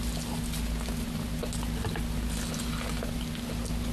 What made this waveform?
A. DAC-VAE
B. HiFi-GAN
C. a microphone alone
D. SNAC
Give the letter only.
C